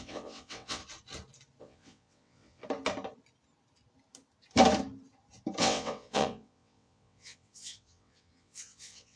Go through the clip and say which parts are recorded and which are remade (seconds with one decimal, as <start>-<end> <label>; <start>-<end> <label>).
0.0-0.8 remade; 0.8-1.6 recorded; 1.6-2.6 remade; 2.6-5.6 recorded; 5.6-9.2 remade